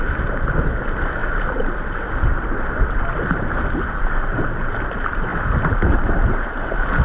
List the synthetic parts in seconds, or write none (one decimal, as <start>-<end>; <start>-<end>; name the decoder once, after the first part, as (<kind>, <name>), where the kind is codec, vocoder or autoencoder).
none